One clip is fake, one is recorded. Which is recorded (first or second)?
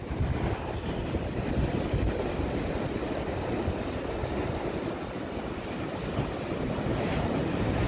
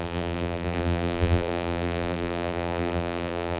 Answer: first